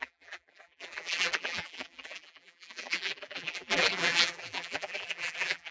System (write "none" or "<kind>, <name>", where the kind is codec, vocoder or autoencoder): vocoder, BigVGAN v2